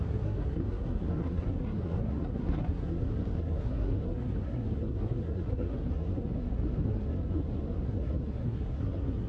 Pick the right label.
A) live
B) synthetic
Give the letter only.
B